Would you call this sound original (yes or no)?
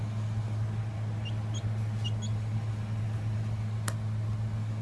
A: yes